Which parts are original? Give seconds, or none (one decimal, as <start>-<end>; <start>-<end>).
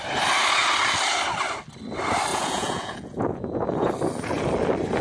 0.0-2.3; 3.9-5.0